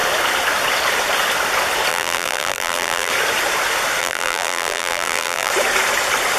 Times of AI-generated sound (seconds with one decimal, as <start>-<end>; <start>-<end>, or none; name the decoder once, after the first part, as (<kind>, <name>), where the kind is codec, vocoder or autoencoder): 1.9-3.1 (vocoder, BigVGAN v2); 4.0-5.5